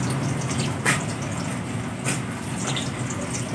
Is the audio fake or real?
real